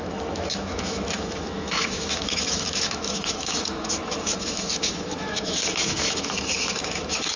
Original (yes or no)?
no